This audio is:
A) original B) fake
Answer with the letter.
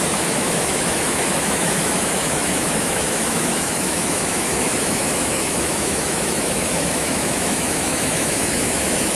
B